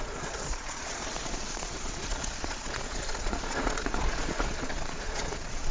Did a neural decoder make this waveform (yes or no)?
yes